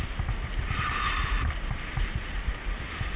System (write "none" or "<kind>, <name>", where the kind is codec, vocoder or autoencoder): none